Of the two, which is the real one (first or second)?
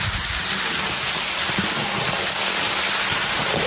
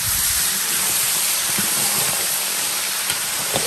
first